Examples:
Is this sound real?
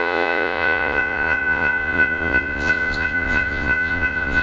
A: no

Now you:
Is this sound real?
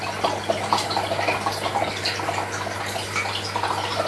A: yes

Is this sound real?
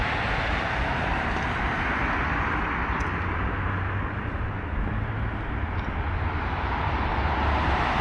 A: yes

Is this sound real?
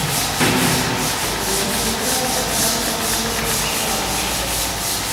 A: yes